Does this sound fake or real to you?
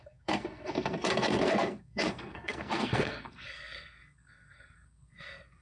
fake